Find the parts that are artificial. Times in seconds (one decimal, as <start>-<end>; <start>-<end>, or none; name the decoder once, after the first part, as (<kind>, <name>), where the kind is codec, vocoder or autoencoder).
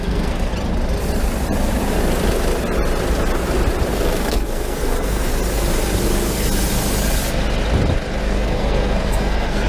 0.0-0.5 (codec, SNAC); 3.9-5.3; 8.2-9.7